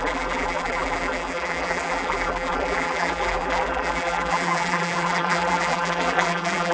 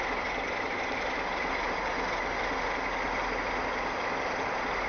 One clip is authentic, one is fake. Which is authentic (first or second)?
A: second